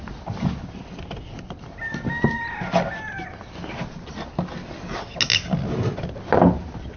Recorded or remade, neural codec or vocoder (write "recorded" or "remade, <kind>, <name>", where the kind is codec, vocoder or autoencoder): recorded